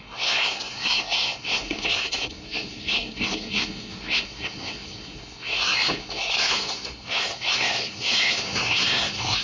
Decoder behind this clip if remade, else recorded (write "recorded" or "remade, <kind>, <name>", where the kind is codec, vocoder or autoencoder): remade, codec, SNAC